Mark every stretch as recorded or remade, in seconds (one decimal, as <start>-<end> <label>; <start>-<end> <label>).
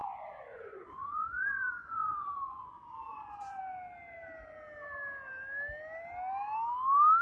0.0-3.6 remade; 3.6-7.2 recorded